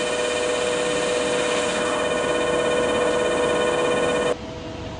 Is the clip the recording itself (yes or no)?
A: yes